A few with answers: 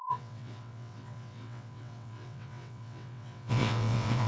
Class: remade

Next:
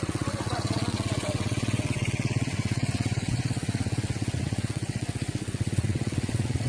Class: remade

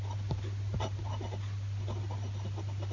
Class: recorded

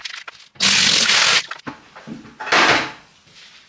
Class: recorded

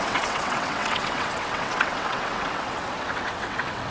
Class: remade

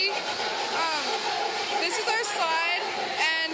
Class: recorded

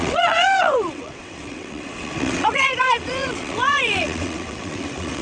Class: remade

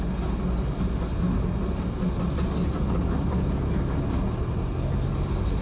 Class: recorded